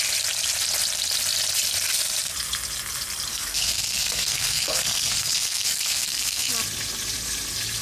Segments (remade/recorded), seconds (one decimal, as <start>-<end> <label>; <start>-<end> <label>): 0.0-3.3 recorded; 3.3-6.5 remade; 6.5-7.8 recorded